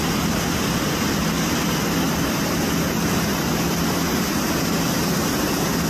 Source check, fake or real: real